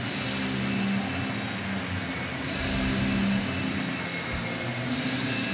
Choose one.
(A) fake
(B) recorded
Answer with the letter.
B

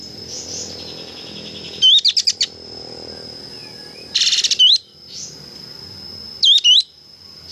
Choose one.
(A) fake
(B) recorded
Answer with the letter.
B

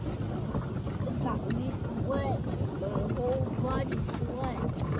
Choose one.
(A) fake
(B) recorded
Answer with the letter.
B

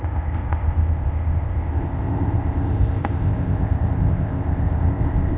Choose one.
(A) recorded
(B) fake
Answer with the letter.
B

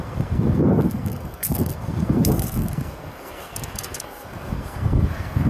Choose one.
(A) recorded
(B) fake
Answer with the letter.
B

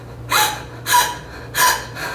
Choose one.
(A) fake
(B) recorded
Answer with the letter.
B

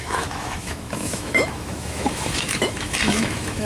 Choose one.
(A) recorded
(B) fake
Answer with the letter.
B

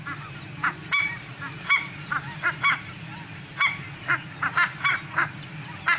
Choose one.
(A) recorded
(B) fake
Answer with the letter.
A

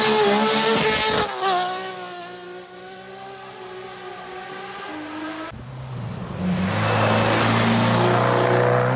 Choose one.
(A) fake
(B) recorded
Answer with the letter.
B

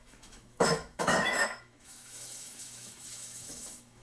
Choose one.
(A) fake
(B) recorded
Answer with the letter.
A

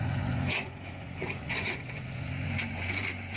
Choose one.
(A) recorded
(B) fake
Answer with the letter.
B